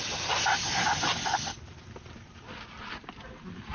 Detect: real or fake real